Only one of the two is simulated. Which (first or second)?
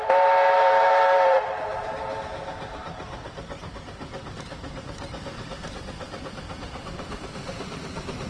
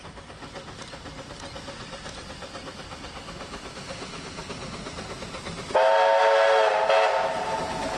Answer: first